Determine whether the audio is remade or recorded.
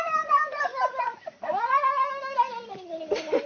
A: recorded